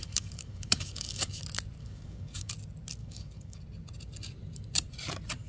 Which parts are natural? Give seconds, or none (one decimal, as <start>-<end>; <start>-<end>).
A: 1.4-1.8; 2.5-3.0; 3.6-5.5